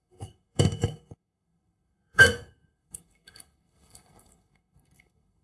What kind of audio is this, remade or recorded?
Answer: remade